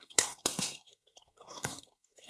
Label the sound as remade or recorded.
remade